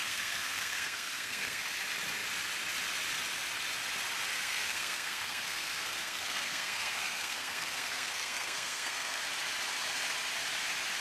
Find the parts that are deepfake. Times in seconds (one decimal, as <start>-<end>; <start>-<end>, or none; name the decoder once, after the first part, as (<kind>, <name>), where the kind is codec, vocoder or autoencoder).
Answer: 0.0-1.6 (codec, SNAC); 4.3-9.2